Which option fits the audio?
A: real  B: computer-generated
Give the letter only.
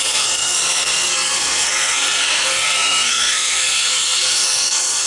B